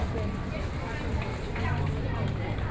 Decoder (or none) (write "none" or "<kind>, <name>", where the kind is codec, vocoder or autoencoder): none